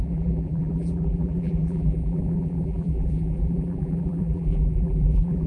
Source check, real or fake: fake